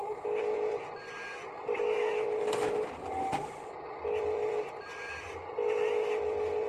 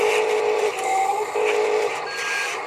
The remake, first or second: second